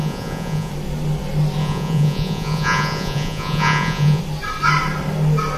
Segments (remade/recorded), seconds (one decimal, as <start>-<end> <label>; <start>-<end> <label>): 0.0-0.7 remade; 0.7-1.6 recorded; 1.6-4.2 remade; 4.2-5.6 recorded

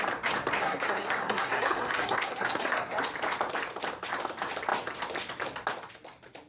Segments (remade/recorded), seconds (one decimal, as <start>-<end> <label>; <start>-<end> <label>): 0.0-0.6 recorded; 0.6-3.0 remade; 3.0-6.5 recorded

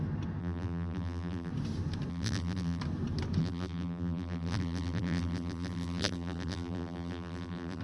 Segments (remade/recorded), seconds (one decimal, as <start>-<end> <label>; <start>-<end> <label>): 0.0-0.4 recorded; 0.4-1.5 remade; 1.5-2.1 recorded; 2.1-2.8 remade; 2.8-3.4 recorded; 3.4-7.8 remade